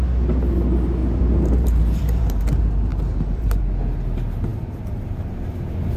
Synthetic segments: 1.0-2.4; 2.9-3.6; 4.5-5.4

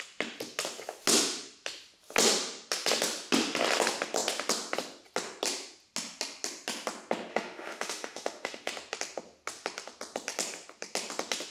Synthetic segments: 7.3-8.7

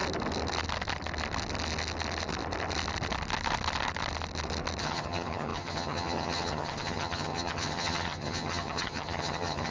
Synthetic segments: 4.8-9.7

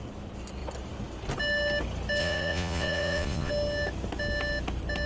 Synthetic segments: 2.2-3.5

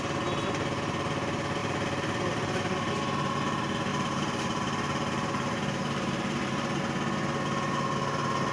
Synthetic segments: 1.6-2.9; 3.9-6.8

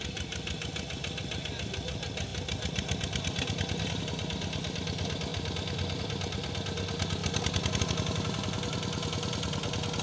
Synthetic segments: none